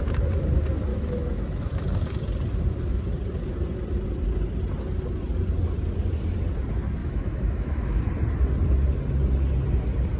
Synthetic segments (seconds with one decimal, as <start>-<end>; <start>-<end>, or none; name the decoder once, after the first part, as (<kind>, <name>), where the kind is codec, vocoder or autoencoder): 0.9-1.6 (autoencoder, DAC-VAE); 7.0-8.1